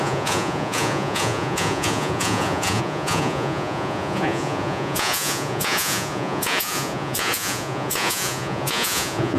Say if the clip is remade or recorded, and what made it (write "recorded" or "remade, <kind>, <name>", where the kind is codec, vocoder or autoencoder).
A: remade, vocoder, Vocos